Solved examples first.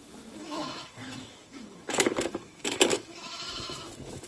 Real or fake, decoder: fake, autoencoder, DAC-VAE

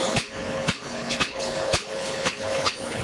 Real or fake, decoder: fake, codec, HILCodec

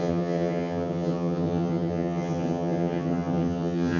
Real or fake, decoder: fake, vocoder, HiFi-GAN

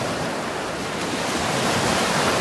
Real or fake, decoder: real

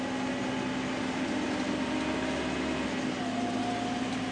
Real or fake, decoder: real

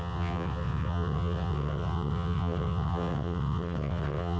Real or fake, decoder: fake, vocoder, WaveNeXt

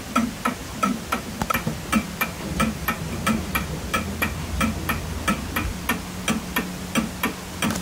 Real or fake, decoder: real